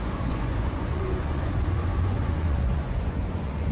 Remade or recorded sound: remade